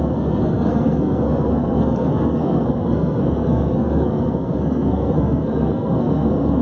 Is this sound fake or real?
fake